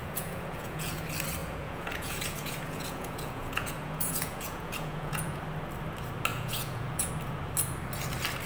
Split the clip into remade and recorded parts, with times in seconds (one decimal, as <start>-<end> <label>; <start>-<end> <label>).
0.0-1.0 remade; 1.0-1.4 recorded; 1.4-5.4 remade; 5.4-6.3 recorded; 6.3-7.1 remade; 7.1-8.5 recorded